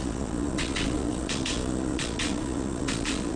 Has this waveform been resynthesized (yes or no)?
yes